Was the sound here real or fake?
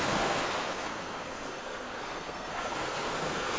fake